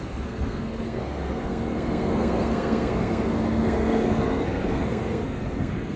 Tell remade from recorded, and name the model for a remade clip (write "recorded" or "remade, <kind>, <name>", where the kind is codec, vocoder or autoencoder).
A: remade, codec, SNAC